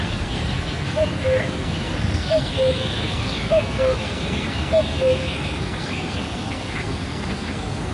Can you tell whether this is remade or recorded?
remade